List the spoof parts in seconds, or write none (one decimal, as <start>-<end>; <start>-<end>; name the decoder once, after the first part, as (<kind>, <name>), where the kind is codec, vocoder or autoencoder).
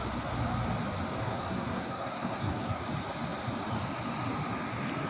1.2-2.8 (codec, SNAC)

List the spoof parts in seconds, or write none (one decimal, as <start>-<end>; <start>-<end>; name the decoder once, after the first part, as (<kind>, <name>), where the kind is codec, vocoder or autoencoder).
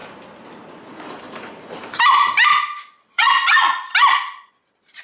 3.0-3.9 (vocoder, Vocos); 4.5-5.0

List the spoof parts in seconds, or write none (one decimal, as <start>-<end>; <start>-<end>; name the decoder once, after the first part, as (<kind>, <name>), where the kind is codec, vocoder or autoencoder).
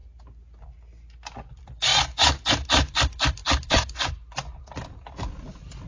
1.5-1.9 (vocoder, BigVGAN v2); 2.7-5.9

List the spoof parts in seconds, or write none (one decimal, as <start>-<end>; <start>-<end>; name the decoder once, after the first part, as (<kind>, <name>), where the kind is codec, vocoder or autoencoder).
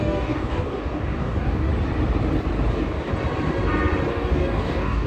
0.0-1.7 (codec, DAC); 2.7-3.1; 4.1-5.1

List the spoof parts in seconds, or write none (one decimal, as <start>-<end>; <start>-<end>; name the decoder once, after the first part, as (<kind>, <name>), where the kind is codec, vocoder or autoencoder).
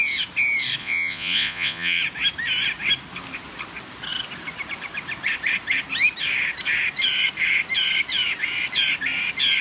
0.8-2.0 (vocoder, Vocos)